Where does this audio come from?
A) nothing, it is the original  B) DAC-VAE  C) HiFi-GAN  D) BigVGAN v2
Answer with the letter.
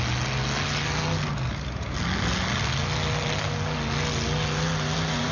A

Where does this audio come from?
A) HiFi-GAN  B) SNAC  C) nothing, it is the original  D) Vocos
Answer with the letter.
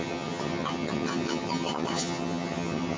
A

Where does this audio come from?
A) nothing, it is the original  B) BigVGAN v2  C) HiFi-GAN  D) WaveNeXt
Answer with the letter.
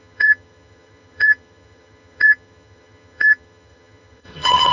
C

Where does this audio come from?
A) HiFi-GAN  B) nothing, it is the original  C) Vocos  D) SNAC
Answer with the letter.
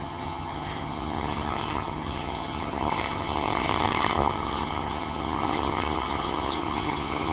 A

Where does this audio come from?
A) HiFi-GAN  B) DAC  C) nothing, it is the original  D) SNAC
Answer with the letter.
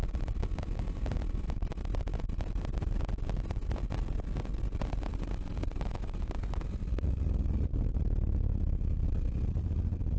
C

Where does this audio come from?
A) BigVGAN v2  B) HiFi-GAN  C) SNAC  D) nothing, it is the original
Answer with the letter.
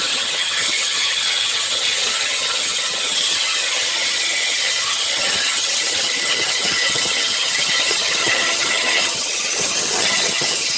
B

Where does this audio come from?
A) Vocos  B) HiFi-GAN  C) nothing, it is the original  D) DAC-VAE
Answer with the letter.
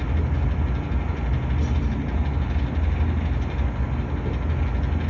C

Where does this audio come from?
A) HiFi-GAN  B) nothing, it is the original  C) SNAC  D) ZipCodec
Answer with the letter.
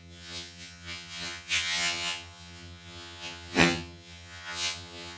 A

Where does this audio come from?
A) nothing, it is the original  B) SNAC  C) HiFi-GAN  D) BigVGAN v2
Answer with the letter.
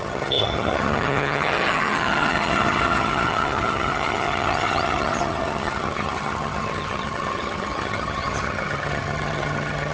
C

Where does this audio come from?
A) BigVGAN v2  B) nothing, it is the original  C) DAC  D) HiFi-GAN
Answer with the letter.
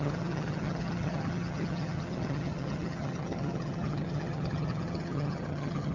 D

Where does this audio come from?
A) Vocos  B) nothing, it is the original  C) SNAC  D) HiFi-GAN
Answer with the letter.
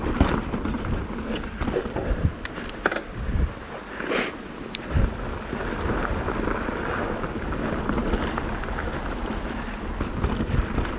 B